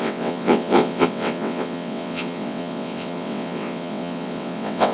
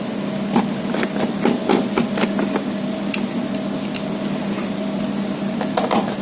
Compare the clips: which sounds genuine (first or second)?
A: second